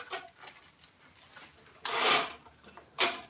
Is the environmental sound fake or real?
real